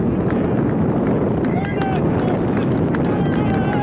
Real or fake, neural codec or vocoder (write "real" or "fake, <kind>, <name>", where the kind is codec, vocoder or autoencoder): real